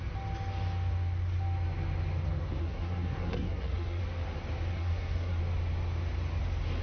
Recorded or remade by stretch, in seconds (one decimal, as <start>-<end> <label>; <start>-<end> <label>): 0.0-2.6 recorded; 2.6-4.0 remade; 4.0-4.7 recorded; 4.7-5.4 remade; 5.4-6.8 recorded